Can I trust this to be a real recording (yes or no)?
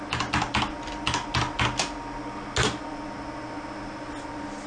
yes